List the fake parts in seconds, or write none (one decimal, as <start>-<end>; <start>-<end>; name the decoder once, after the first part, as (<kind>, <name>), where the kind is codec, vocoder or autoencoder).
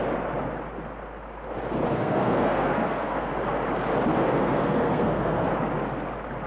1.9-3.3 (codec, SNAC); 4.1-5.5